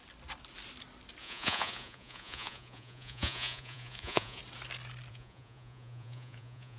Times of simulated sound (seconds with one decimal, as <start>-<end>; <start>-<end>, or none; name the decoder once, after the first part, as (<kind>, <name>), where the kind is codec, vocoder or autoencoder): 1.2-4.4 (vocoder, Vocos); 5.1-6.8